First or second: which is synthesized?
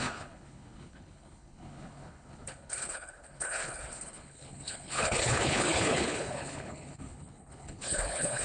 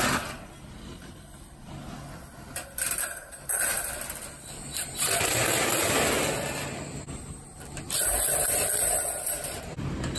first